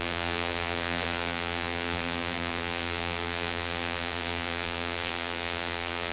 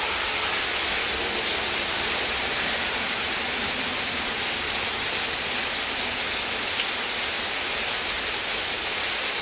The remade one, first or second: first